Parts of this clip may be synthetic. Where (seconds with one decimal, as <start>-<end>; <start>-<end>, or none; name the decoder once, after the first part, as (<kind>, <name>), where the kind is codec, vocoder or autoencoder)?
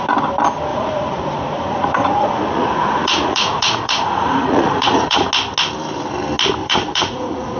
0.7-5.3 (vocoder, Vocos); 6.6-7.6